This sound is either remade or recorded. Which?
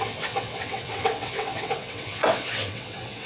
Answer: remade